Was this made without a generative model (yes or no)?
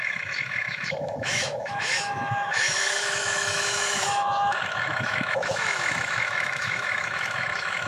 no